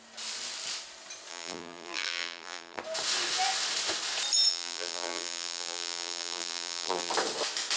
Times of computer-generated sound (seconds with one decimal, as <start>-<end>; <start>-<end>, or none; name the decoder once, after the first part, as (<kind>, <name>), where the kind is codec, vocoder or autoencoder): 1.3-2.8 (vocoder, BigVGAN v2); 4.5-7.1